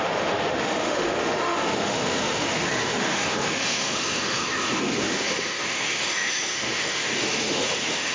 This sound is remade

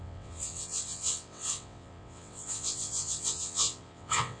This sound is remade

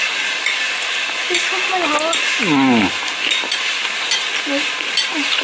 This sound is recorded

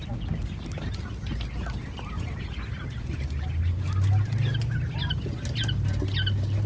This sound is recorded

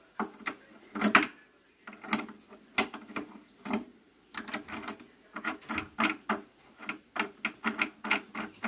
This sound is recorded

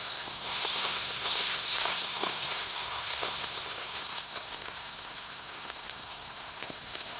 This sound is remade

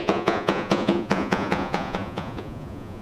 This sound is remade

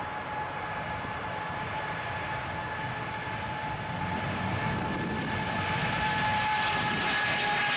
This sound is recorded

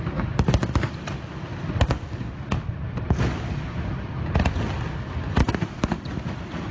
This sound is recorded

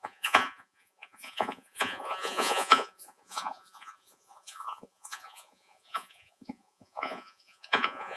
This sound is remade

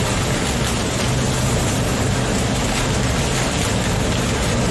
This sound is recorded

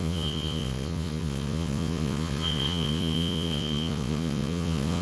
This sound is remade